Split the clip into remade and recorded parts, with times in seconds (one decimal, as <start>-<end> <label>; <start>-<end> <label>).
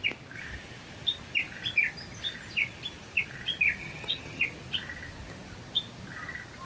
0.0-3.8 recorded; 3.8-4.4 remade; 4.4-6.7 recorded